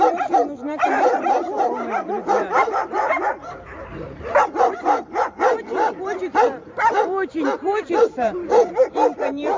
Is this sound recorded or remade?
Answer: remade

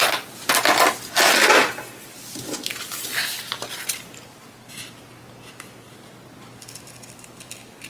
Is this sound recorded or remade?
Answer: recorded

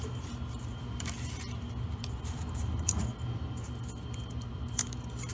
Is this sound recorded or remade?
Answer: remade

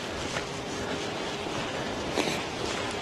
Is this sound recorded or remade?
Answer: recorded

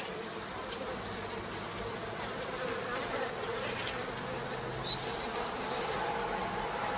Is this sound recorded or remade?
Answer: remade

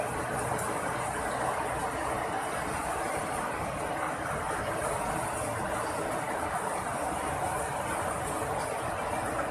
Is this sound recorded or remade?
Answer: recorded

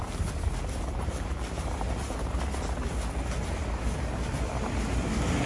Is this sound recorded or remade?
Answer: recorded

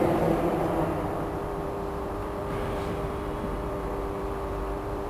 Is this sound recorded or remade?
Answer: remade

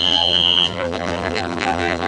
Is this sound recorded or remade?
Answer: remade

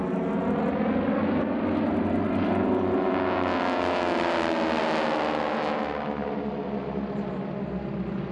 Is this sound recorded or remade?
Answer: recorded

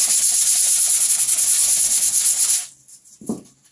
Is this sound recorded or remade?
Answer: recorded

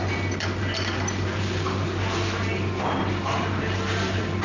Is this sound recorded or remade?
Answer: recorded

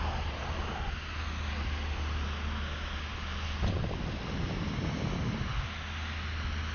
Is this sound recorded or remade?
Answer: recorded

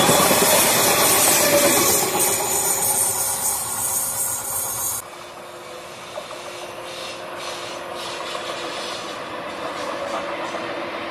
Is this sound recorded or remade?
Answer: recorded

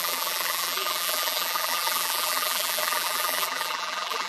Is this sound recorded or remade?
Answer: remade